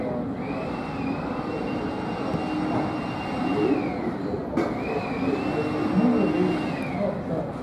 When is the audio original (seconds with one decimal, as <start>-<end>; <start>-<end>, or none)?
0.0-7.6